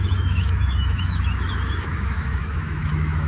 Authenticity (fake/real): fake